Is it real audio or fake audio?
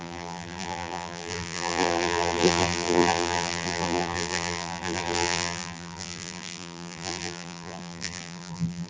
fake